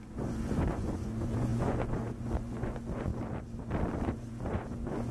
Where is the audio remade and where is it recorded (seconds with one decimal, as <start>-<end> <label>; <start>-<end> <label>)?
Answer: 0.0-3.1 remade; 3.1-4.0 recorded; 4.0-5.1 remade

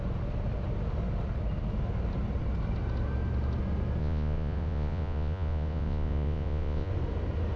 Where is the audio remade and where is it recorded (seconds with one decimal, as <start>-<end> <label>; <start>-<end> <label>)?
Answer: 0.0-4.0 recorded; 4.0-6.9 remade; 6.9-7.6 recorded

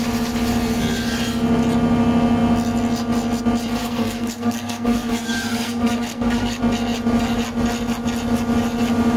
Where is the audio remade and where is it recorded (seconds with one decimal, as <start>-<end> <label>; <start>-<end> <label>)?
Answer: 0.0-3.8 recorded; 3.8-6.6 remade; 6.6-9.2 recorded

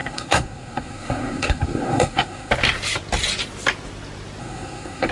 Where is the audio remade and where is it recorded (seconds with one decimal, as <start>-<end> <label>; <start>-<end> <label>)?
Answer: 0.0-2.5 remade; 2.5-4.4 recorded; 4.4-5.1 remade

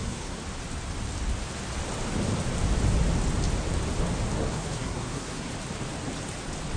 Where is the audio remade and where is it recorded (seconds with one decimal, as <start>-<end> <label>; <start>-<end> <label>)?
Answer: 0.0-0.4 remade; 0.4-4.5 recorded; 4.5-5.5 remade; 5.5-6.8 recorded